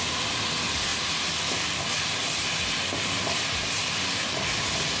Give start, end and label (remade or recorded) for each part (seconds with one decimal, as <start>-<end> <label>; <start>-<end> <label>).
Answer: 0.0-5.0 recorded